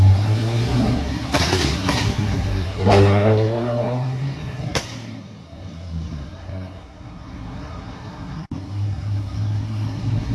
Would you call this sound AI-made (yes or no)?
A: yes